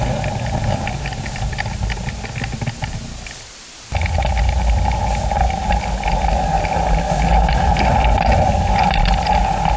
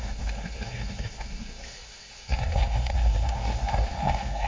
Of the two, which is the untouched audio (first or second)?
first